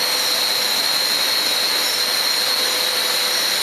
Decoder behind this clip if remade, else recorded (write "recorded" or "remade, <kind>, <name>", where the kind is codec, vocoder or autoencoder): recorded